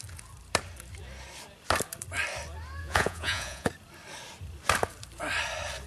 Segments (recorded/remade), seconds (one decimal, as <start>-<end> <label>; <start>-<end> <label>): 0.0-2.8 recorded; 2.8-3.7 remade; 3.7-5.9 recorded